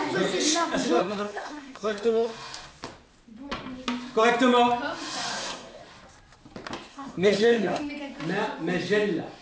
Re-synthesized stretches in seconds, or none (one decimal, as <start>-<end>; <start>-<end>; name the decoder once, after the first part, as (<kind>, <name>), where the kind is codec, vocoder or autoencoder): 1.0-2.3 (codec, SNAC); 5.3-5.8; 6.9-7.9

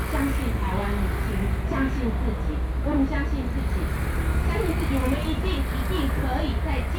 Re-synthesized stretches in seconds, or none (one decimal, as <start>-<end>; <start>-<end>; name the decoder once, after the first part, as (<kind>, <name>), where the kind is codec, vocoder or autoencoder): none

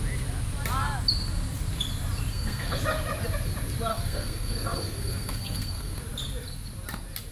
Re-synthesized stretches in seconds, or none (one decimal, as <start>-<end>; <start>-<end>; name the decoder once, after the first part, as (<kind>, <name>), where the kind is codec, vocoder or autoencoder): 2.3-2.8 (codec, SNAC); 3.9-6.0

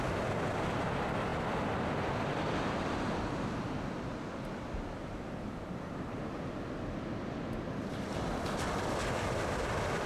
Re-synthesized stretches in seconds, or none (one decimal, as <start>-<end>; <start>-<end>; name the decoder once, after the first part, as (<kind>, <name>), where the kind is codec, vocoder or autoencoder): none

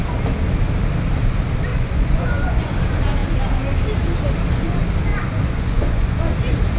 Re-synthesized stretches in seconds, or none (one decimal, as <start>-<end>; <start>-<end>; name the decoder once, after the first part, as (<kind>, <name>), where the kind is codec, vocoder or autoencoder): 1.7-2.7 (vocoder, Vocos); 5.1-6.2

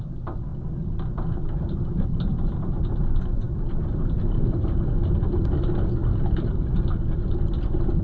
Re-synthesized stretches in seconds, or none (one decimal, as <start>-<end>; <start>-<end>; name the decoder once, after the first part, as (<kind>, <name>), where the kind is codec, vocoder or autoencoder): none

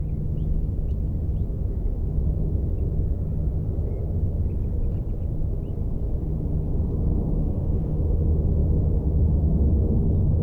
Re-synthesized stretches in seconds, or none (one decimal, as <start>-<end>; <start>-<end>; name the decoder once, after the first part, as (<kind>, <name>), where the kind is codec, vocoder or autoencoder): 7.4-8.2 (autoencoder, DAC-VAE)

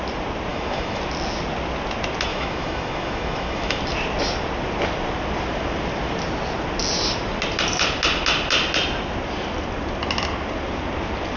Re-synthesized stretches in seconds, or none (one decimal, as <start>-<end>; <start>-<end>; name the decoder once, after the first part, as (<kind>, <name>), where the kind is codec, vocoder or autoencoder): 0.5-1.0 (autoencoder, DAC-VAE); 2.3-3.8